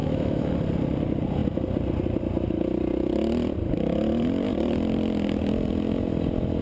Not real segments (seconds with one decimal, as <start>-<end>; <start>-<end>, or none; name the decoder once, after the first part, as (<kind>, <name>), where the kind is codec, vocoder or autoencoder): 0.0-0.5 (autoencoder, DAC-VAE)